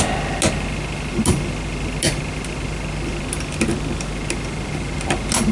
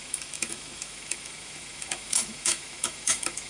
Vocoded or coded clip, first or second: second